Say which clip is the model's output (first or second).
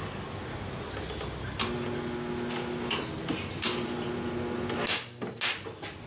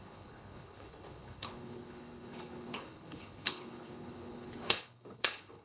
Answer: second